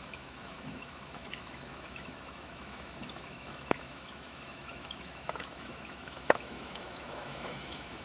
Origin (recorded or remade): remade